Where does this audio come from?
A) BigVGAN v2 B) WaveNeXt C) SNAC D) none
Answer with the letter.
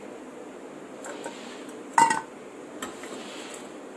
D